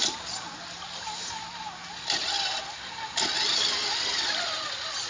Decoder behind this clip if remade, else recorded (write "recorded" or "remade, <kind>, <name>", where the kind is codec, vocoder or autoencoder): recorded